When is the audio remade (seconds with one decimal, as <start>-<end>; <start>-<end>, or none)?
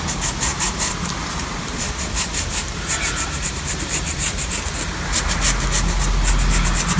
0.5-4.7